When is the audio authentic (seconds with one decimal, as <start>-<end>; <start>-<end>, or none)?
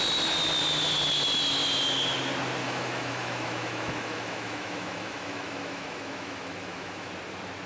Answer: 0.0-2.6; 7.1-7.7